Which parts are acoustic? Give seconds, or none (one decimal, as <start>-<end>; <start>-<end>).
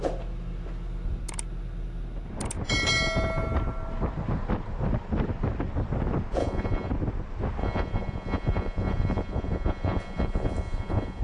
0.0-6.4; 6.9-7.6